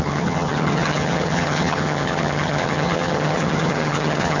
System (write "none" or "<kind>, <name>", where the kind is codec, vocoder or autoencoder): vocoder, HiFi-GAN